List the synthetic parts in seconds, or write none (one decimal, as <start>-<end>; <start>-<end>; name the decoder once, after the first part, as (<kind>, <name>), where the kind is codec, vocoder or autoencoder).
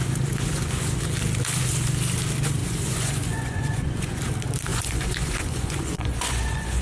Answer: 0.0-1.0 (vocoder, Vocos); 2.6-4.2; 4.7-6.8